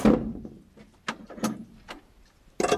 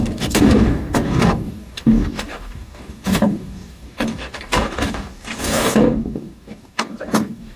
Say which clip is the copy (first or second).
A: second